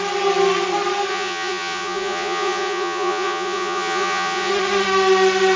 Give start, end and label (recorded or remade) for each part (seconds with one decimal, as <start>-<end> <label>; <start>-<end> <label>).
0.0-1.1 recorded; 1.1-4.5 remade; 4.5-5.6 recorded